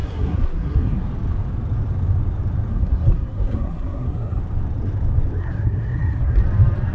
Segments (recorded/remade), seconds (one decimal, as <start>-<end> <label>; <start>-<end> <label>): 0.0-1.0 remade; 1.0-2.7 recorded; 2.7-4.4 remade; 4.4-5.4 recorded; 5.4-6.4 remade; 6.4-6.9 recorded